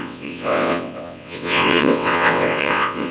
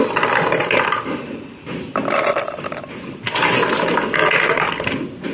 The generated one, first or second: first